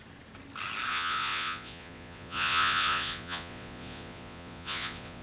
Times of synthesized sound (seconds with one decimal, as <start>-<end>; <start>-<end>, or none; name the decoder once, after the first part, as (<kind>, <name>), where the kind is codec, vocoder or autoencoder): 0.9-5.2 (vocoder, Vocos)